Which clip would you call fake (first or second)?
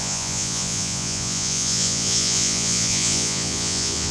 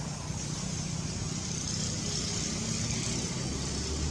first